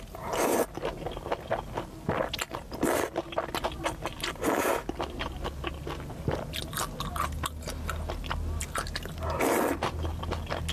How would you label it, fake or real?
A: real